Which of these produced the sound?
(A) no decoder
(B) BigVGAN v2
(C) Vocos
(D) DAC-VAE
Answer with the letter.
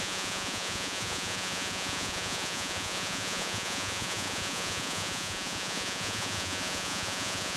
C